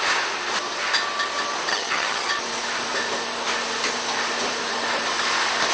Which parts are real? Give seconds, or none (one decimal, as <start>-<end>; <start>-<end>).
0.0-1.7; 2.3-5.7